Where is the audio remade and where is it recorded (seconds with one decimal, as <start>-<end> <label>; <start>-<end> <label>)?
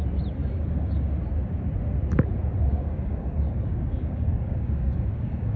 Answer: 0.0-0.4 recorded; 0.4-1.1 remade; 1.1-2.7 recorded; 2.7-5.6 remade